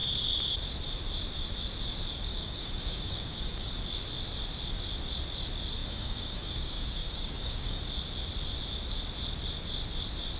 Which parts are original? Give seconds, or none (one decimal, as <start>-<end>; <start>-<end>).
0.0-2.3; 3.7-5.8; 7.8-10.4